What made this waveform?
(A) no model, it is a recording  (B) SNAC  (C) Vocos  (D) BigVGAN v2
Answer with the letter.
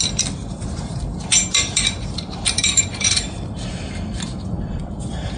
D